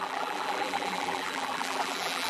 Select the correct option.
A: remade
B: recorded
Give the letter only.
A